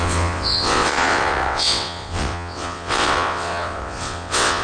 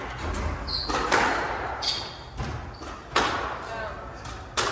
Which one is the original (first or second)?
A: second